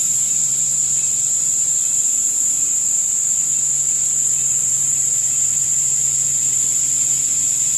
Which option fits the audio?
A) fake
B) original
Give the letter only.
A